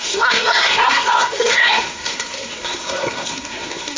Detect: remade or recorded remade